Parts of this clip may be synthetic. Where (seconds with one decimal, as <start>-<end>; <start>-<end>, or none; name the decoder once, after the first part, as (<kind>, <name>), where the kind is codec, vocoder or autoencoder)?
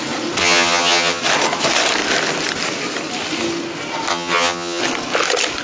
0.4-1.2 (vocoder, HiFi-GAN); 4.1-4.8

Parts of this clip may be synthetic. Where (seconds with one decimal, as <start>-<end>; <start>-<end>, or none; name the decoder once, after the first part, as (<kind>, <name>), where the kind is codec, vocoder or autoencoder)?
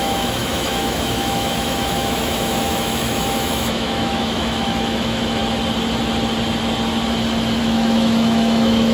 0.0-5.4 (autoencoder, DAC-VAE); 7.6-8.9